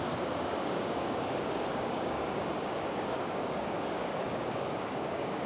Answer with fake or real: fake